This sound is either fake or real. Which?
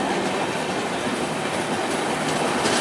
real